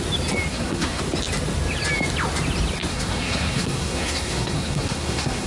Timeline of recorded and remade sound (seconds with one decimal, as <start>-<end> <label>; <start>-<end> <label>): 0.0-0.5 recorded; 0.5-1.0 remade; 1.0-2.9 recorded; 2.9-5.5 remade

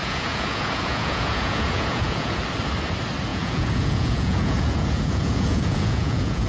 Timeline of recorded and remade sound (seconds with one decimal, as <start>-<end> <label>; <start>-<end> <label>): 0.0-2.4 remade; 2.4-3.3 recorded; 3.3-6.5 remade